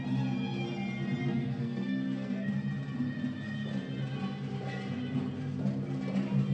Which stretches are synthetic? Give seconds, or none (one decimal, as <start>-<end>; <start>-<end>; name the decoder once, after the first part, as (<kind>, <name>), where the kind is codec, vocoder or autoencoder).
1.2-2.5 (codec, SNAC)